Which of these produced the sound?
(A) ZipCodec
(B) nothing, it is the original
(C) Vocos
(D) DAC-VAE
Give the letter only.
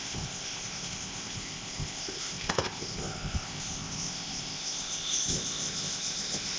A